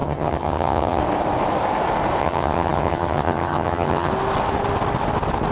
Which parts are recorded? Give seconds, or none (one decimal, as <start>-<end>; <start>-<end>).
1.0-2.2; 4.1-5.5

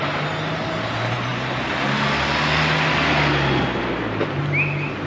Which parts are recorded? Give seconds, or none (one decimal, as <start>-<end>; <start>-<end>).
0.0-5.1